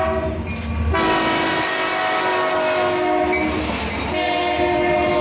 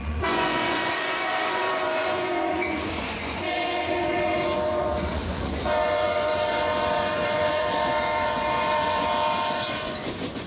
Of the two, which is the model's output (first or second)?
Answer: second